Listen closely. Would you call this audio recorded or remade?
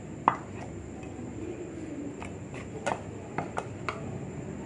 recorded